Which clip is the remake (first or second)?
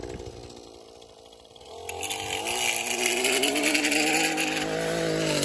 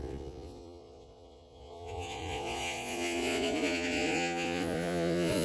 second